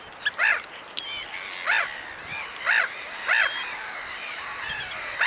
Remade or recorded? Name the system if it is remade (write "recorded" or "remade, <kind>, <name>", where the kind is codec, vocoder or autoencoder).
recorded